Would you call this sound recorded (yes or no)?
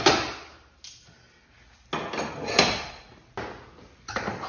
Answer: yes